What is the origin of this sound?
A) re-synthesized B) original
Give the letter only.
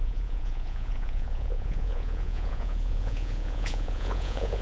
A